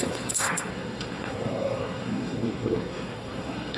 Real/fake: fake